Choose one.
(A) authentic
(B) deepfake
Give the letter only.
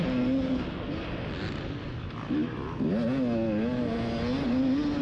A